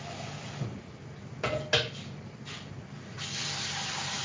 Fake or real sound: real